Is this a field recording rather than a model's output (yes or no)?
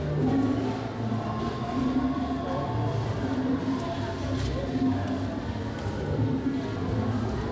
yes